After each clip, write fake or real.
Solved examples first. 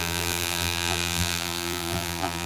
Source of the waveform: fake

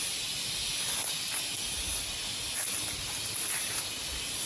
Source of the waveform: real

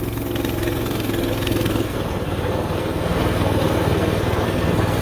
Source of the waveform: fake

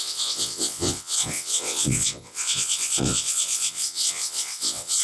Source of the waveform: fake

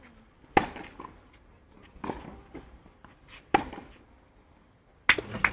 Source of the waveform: real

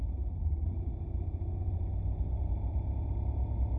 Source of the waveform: real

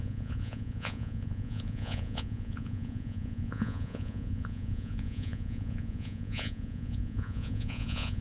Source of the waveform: fake